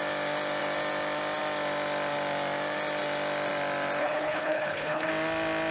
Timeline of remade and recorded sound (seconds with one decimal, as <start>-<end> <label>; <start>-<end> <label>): 0.0-4.0 recorded; 4.0-5.1 remade; 5.1-5.7 recorded